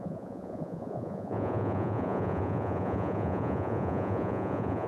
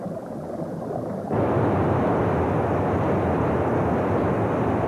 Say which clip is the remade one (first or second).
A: first